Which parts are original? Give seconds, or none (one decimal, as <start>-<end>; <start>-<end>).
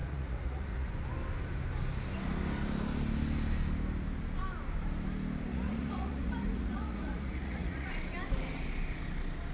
0.9-5.5; 7.9-9.5